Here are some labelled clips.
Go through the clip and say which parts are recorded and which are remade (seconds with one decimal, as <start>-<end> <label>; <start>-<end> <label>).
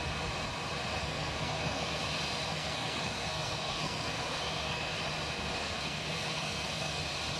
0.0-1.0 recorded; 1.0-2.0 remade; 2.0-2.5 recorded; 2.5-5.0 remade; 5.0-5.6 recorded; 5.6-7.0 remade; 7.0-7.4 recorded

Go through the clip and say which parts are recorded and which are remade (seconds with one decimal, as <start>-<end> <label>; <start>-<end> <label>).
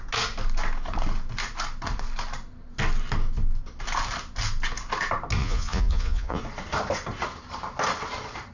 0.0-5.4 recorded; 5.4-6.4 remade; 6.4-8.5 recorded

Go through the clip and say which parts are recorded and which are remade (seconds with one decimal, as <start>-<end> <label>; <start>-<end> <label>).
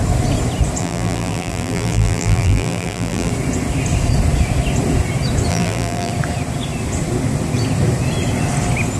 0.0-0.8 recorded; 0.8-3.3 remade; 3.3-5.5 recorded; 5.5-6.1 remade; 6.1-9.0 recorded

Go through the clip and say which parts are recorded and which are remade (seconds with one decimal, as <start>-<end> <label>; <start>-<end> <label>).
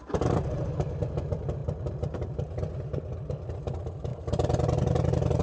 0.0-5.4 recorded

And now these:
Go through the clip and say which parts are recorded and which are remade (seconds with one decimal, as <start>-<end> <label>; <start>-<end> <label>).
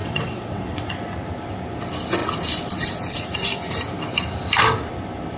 0.0-0.9 remade; 0.9-5.4 recorded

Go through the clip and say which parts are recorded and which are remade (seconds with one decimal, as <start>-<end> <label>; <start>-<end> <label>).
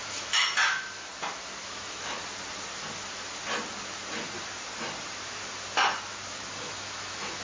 0.0-1.1 remade; 1.1-1.6 recorded; 1.6-2.2 remade; 2.2-6.6 recorded; 6.6-7.4 remade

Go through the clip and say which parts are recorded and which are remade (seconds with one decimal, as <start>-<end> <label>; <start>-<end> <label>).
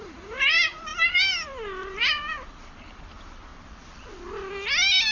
0.0-3.5 remade; 3.5-5.1 recorded